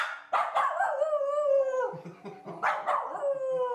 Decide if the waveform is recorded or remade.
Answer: recorded